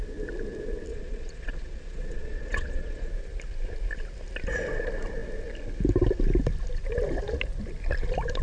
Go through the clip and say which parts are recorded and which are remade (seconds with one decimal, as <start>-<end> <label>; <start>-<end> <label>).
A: 0.0-0.9 recorded; 0.9-3.1 remade; 3.1-8.4 recorded